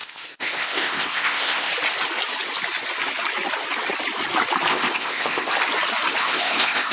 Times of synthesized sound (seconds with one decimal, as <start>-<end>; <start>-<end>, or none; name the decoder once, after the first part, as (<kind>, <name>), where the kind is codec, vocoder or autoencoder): 0.0-1.7 (codec, ZipCodec); 4.7-5.5; 6.2-6.9